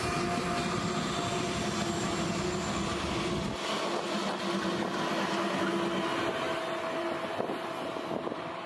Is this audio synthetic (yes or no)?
no